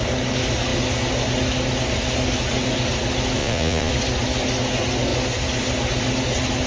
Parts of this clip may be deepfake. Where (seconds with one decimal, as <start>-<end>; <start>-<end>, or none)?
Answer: 3.4-3.9